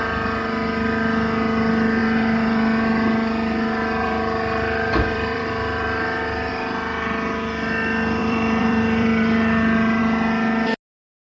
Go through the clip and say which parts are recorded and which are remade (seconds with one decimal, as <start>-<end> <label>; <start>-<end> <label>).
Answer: 0.0-2.0 recorded; 2.0-6.5 remade; 6.5-8.2 recorded; 8.2-10.0 remade; 10.0-11.2 recorded